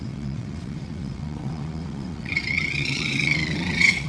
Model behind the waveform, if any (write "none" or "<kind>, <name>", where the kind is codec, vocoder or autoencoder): vocoder, WaveNeXt